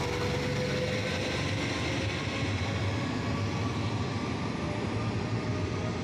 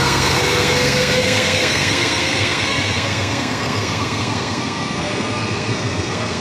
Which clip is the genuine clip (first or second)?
first